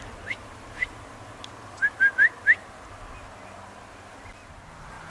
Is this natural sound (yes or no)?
yes